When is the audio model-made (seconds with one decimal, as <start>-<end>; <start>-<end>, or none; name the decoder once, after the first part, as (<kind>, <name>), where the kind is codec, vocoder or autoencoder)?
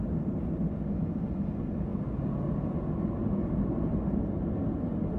none